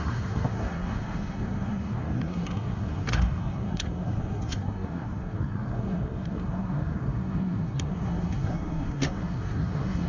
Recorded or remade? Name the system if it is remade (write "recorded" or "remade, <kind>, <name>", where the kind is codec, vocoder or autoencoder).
remade, codec, SNAC